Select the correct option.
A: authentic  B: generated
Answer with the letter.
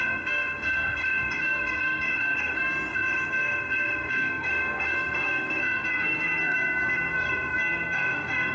B